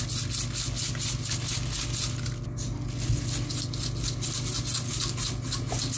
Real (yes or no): yes